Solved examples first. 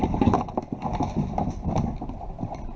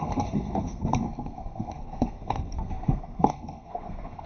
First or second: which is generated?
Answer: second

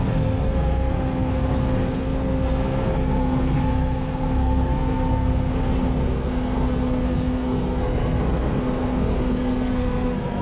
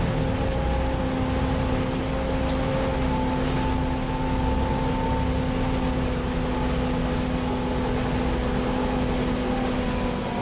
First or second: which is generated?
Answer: first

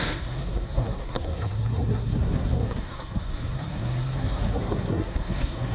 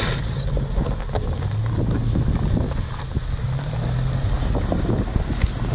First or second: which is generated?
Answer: first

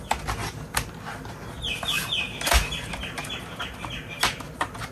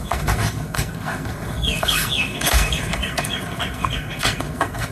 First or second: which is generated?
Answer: second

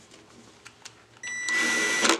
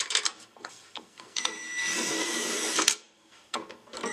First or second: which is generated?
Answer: second